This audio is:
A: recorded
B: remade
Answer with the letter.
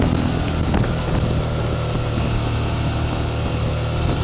A